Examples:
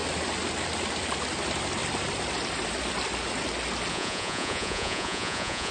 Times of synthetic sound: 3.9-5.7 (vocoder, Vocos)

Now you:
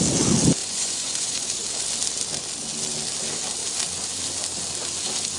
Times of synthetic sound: 0.6-1.5 (vocoder, Vocos)

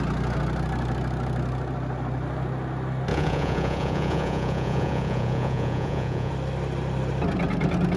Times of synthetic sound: 3.1-6.3 (vocoder, Vocos)

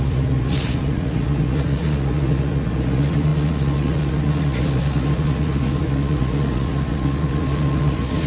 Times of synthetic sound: 0.0-8.3 (vocoder, Vocos)

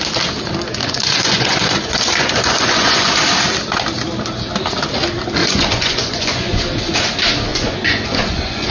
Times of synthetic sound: 0.8-3.1 (vocoder, Vocos); 5.4-6.6; 7.5-8.7

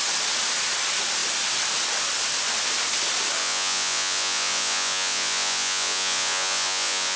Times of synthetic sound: 3.4-7.2 (vocoder, Vocos)

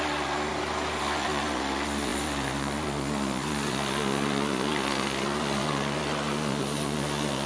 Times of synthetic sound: 0.0-0.5 (vocoder, Vocos); 1.0-7.5